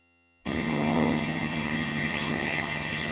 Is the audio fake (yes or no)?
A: yes